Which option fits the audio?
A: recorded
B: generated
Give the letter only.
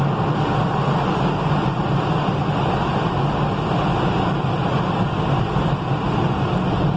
A